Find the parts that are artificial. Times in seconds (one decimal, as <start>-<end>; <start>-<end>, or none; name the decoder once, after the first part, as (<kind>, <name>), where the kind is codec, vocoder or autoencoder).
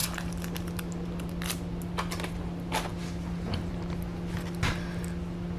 none